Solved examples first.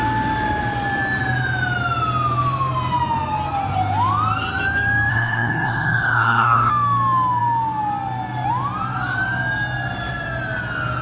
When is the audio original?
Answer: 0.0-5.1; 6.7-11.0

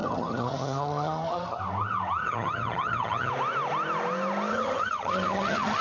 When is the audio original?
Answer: 1.6-2.2; 3.3-4.5

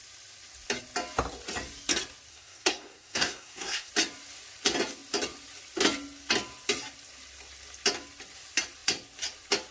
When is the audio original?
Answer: 0.0-2.3; 3.9-9.7

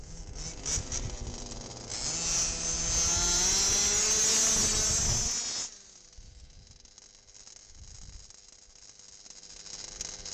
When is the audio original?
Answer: 0.0-10.3

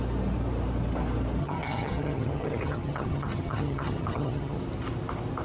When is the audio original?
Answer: 0.0-1.4; 4.6-5.4

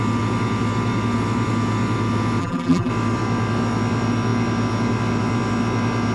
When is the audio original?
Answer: 0.0-2.4; 2.9-6.1